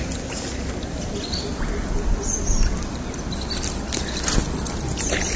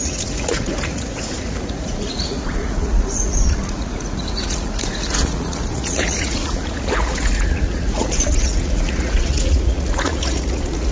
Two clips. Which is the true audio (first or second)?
first